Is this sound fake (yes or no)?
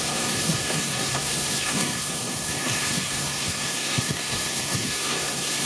yes